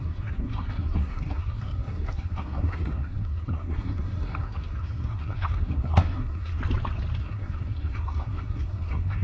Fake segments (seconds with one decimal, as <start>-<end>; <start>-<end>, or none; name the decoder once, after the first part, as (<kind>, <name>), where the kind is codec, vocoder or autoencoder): 0.0-6.6 (codec, SNAC); 7.2-9.2

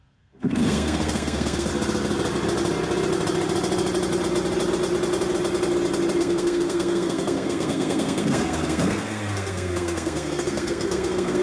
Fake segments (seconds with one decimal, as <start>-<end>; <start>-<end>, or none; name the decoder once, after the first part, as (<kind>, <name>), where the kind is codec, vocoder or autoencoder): 0.0-1.7 (codec, SNAC); 6.2-11.4

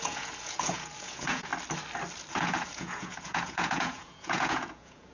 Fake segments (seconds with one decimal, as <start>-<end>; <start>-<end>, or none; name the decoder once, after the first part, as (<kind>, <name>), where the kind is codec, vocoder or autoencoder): 0.0-1.5 (vocoder, Vocos); 2.3-5.1

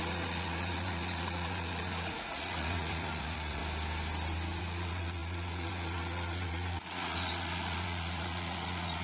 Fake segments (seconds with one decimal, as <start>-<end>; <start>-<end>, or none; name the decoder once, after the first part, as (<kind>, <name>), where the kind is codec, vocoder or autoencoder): 0.0-3.6 (vocoder, Vocos); 4.6-9.0

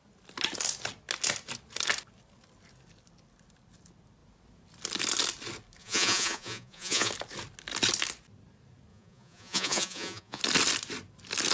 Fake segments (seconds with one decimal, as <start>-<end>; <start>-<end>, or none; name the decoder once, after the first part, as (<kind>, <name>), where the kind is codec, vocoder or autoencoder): 5.8-7.1 (vocoder, Vocos); 8.9-10.4

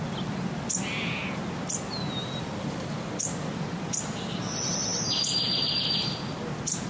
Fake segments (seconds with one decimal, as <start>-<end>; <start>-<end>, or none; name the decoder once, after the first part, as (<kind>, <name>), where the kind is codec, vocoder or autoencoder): 2.2-3.1 (vocoder, BigVGAN v2)

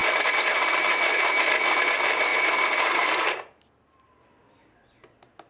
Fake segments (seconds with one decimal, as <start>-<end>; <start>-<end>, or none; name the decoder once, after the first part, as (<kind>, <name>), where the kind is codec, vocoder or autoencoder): 0.0-1.5 (vocoder, BigVGAN v2); 2.3-3.6